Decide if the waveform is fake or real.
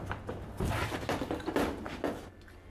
real